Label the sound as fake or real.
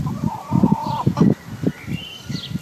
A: real